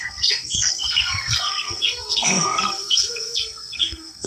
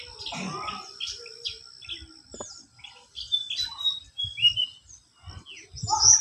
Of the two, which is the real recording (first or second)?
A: second